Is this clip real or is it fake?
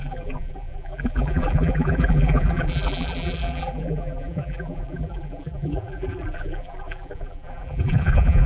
fake